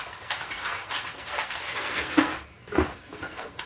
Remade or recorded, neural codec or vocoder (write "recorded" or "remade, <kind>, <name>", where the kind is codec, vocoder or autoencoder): remade, codec, SNAC